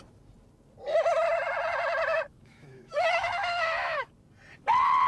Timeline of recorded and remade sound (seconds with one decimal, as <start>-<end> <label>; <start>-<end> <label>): 0.0-2.3 recorded; 2.3-4.1 remade; 4.1-5.1 recorded